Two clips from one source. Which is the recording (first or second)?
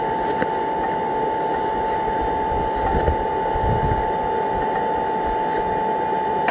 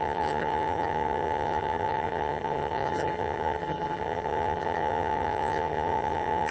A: first